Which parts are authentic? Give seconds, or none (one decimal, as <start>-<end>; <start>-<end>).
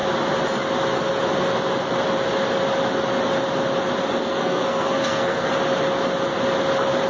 0.0-4.2; 5.5-7.1